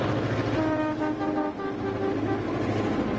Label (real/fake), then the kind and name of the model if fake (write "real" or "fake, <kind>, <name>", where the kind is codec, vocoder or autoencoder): real